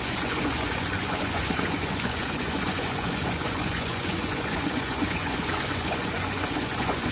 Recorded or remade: remade